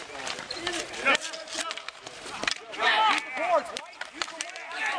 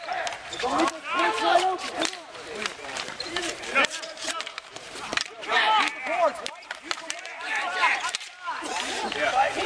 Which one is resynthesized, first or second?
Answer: second